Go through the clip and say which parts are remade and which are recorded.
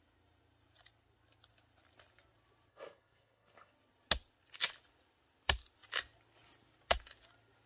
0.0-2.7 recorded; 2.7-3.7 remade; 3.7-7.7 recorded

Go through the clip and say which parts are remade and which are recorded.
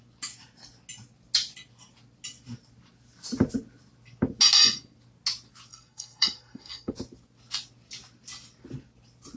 0.0-5.7 recorded; 5.7-6.9 remade; 6.9-9.4 recorded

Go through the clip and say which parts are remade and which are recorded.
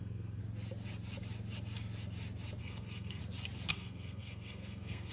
0.0-0.4 remade; 0.4-2.6 recorded; 2.6-3.2 remade; 3.2-3.7 recorded; 3.7-5.1 remade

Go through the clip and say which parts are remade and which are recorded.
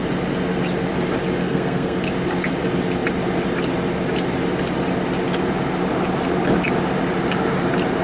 0.0-1.4 recorded; 1.4-2.0 remade; 2.0-8.0 recorded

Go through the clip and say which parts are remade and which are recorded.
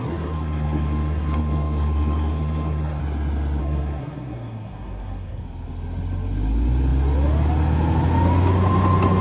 0.0-3.0 remade; 3.0-3.6 recorded; 3.6-5.4 remade; 5.4-9.2 recorded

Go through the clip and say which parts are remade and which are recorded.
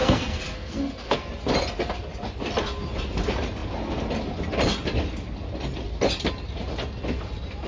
0.0-1.3 remade; 1.3-7.7 recorded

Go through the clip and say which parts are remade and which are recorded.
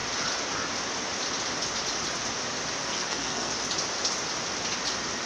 0.0-2.8 recorded; 2.8-3.5 remade; 3.5-5.3 recorded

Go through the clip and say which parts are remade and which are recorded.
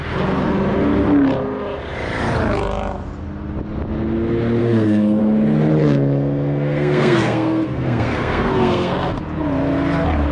0.0-4.6 recorded; 4.6-5.2 remade; 5.2-5.8 recorded; 5.8-9.2 remade; 9.2-10.3 recorded